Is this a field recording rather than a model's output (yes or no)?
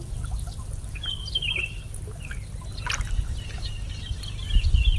yes